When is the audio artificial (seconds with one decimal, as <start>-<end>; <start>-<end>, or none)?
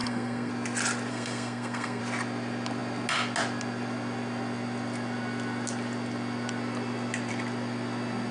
0.0-0.5; 1.1-2.0